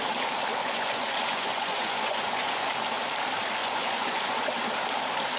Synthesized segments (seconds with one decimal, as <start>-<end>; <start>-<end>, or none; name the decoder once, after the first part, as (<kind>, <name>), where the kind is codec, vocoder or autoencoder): 0.6-2.7 (vocoder, Vocos); 3.6-4.5